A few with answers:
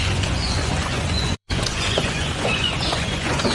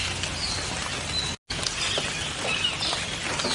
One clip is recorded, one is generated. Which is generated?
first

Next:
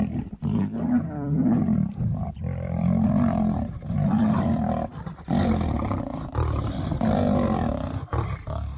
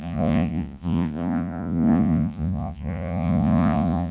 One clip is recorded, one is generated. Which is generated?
second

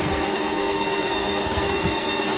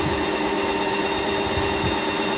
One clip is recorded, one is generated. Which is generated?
first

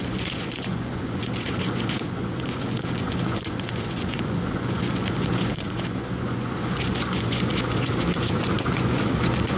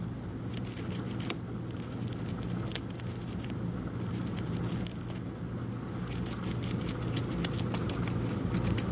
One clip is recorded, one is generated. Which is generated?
first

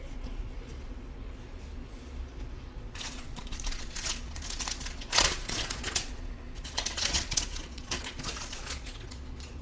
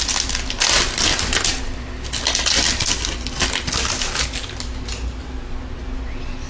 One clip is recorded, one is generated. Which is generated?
first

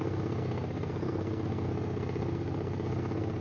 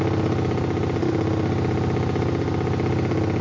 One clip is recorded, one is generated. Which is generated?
first